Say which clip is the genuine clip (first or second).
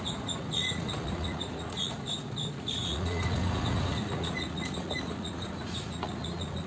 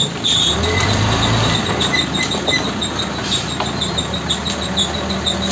second